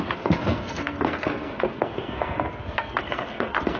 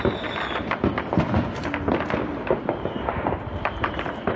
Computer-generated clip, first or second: first